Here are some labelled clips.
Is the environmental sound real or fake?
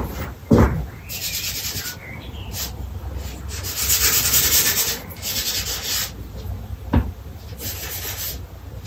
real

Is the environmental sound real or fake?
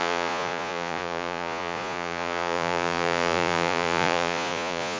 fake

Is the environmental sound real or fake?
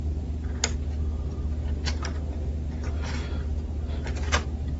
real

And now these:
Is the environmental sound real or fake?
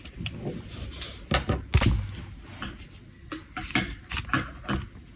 real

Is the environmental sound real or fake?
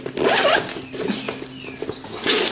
real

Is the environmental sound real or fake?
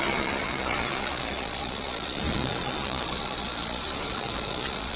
fake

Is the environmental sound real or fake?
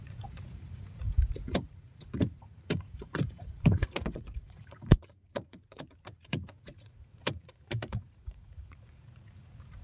fake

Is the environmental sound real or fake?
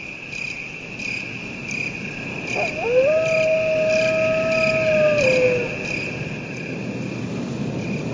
real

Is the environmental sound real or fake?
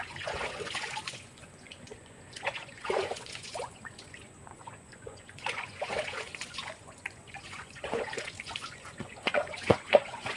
fake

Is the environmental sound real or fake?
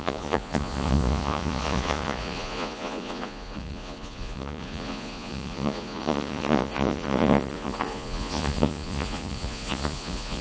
fake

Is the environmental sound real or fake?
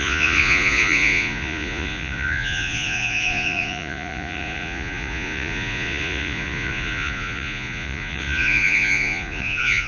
fake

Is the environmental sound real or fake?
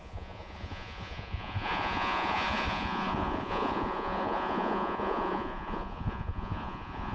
fake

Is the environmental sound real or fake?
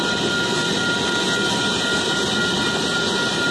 real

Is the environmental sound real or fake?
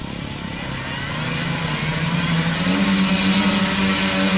real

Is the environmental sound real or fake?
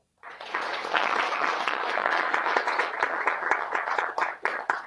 fake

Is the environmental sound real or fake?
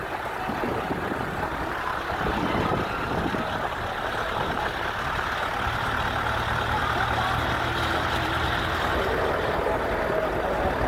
real